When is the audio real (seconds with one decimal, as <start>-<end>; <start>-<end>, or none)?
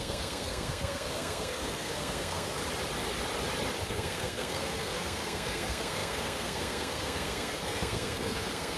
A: 2.6-3.8